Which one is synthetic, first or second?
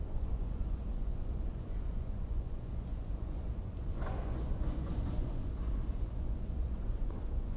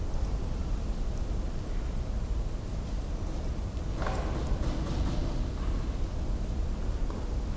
first